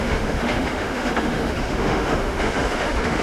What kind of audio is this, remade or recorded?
remade